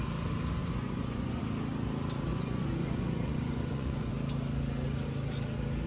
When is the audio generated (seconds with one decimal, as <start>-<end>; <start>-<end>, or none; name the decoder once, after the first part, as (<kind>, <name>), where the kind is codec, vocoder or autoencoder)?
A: 0.6-1.4 (vocoder, Vocos); 2.3-4.1